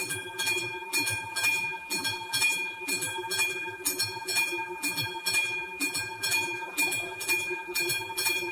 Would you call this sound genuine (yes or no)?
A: no